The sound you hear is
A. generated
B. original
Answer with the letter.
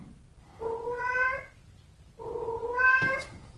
B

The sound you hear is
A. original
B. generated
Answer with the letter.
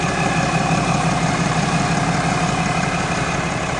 B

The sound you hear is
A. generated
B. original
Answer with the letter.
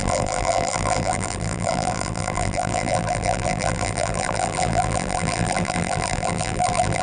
A